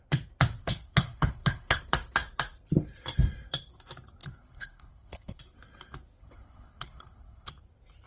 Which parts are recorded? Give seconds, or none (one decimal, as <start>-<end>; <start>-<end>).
0.0-0.6; 1.8-4.2; 5.4-6.2; 7.5-8.1